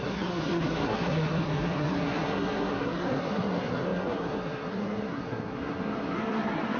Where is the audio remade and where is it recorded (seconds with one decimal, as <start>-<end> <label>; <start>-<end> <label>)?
0.0-6.8 remade